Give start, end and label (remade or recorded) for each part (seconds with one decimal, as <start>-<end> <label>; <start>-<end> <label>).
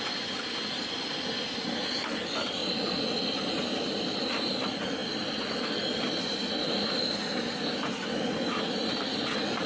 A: 0.0-9.7 recorded